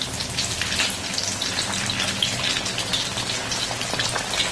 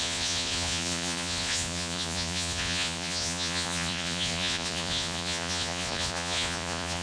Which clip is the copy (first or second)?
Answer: second